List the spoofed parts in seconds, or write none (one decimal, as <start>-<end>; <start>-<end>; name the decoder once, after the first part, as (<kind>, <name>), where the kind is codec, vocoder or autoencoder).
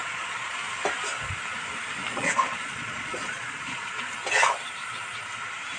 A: 0.0-0.5 (vocoder, Vocos); 2.1-4.1